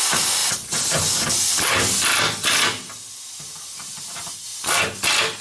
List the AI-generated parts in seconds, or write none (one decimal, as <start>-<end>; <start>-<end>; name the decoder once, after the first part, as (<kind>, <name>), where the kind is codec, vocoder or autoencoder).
none

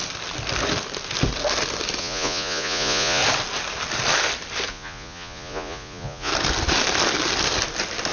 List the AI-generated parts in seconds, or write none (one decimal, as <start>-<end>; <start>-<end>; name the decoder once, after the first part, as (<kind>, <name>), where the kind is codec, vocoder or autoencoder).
2.0-3.2 (vocoder, Vocos); 4.7-6.3

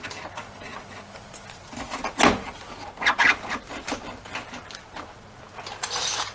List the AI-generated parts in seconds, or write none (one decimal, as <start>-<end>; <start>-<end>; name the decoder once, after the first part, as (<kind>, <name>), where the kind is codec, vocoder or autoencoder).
none